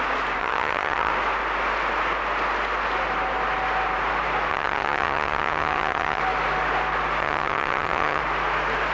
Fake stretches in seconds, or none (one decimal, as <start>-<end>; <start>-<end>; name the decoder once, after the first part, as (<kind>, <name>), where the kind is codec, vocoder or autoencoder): 0.4-1.1 (vocoder, HiFi-GAN); 4.5-6.2; 7.2-8.2